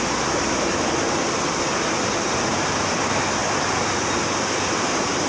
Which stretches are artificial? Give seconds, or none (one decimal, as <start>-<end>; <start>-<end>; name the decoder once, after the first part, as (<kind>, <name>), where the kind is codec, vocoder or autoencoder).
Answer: 3.4-4.8 (vocoder, BigVGAN v2)